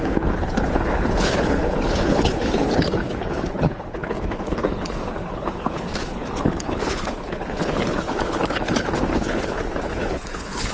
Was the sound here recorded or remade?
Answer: remade